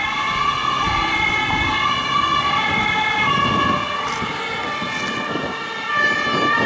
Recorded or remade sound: recorded